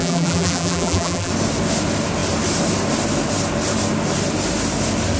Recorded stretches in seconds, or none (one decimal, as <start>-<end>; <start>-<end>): 1.3-5.2